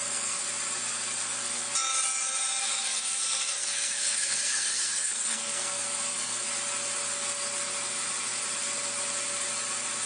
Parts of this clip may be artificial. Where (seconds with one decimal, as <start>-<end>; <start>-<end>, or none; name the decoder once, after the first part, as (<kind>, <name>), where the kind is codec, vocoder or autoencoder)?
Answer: 0.0-0.4 (codec, SNAC); 1.2-1.6; 2.6-6.5